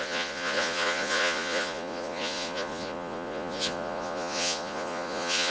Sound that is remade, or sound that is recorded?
remade